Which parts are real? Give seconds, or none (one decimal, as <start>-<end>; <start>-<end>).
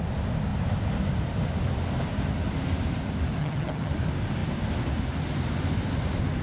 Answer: 0.0-3.4; 3.9-6.4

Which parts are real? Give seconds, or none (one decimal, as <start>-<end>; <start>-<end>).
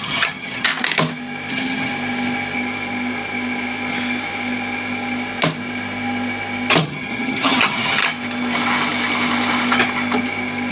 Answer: 0.7-1.5; 1.9-6.8; 8.0-10.7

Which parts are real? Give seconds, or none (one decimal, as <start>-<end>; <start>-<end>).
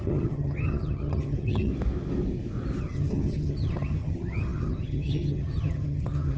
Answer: 1.7-2.8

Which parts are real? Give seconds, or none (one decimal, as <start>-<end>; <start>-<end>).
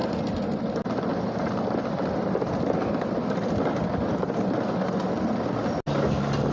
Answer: 0.0-6.5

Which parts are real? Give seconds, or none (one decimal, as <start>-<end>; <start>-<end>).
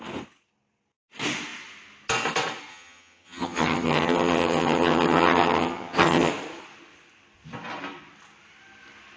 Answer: 0.0-2.7; 6.3-9.2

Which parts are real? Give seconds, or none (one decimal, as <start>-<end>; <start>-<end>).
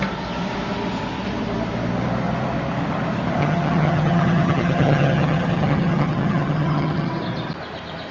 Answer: 0.0-3.4; 7.1-8.1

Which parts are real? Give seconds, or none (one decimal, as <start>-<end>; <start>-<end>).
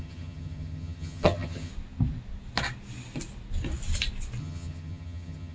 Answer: 1.7-4.4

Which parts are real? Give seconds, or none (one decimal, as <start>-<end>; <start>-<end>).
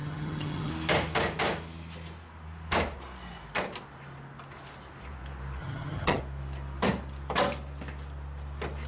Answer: 0.7-5.6; 6.2-8.9